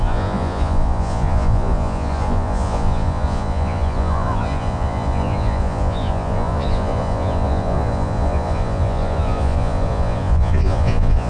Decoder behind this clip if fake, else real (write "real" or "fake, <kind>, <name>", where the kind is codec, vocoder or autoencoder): fake, vocoder, Vocos